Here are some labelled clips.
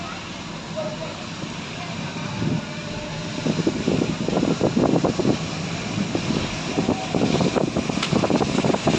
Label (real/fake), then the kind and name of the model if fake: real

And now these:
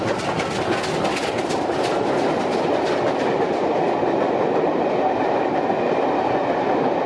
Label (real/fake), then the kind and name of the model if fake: real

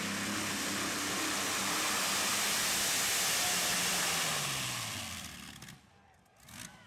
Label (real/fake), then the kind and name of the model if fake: real